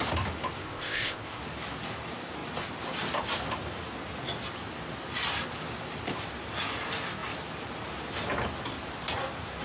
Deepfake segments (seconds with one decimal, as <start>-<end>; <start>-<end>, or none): 0.6-1.4